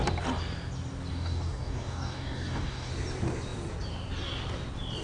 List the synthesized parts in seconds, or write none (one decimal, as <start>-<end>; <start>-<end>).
1.1-2.9